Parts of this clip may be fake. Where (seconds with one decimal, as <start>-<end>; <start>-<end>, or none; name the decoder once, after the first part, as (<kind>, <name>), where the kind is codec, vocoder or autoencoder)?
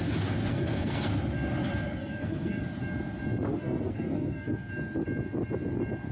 0.5-1.1 (codec, SNAC); 2.0-2.6; 3.5-4.7